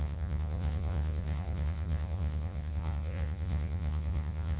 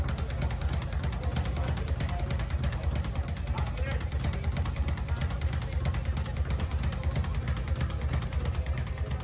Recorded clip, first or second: second